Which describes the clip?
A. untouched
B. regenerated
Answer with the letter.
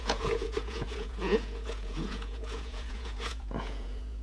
B